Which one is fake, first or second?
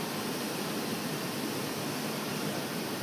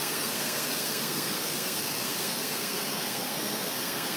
second